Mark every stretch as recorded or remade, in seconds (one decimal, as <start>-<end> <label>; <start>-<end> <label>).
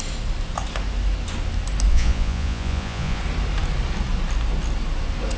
0.0-1.9 recorded; 1.9-3.2 remade; 3.2-5.4 recorded